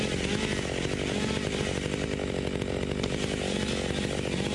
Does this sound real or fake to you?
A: real